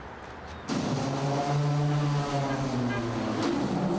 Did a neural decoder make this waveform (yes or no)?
no